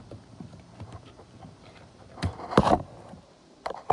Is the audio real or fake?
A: fake